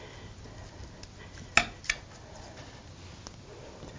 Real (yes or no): yes